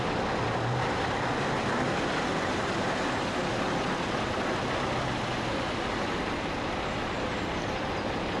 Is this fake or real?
real